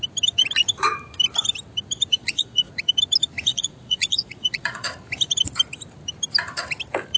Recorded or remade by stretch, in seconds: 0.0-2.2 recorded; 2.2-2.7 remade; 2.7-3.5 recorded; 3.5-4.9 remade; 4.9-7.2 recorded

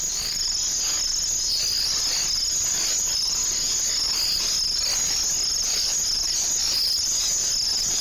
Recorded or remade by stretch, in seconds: 0.0-8.0 recorded

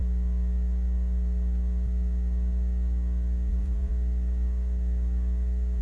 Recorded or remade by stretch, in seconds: 0.0-3.5 recorded; 3.5-3.9 remade; 3.9-5.8 recorded

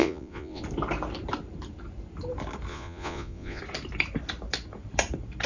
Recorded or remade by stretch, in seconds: 0.0-0.6 remade; 0.6-2.7 recorded; 2.7-3.6 remade; 3.6-5.5 recorded

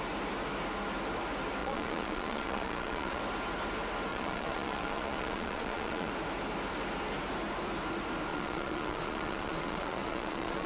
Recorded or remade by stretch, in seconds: 0.0-1.6 recorded; 1.6-3.2 remade; 3.2-4.1 recorded; 4.1-6.1 remade; 6.1-8.3 recorded; 8.3-10.7 remade

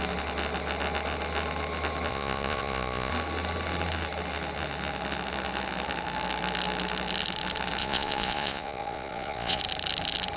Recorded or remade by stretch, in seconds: 0.0-2.1 recorded; 2.1-3.1 remade; 3.1-7.8 recorded; 7.8-9.6 remade; 9.6-10.4 recorded

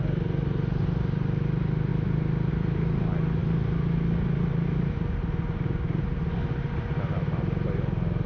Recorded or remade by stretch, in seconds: 0.0-8.3 recorded

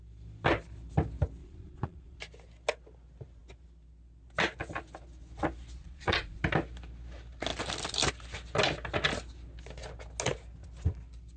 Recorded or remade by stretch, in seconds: 0.0-1.4 recorded; 1.4-2.2 remade; 2.2-5.8 recorded; 5.8-6.4 remade; 6.4-11.4 recorded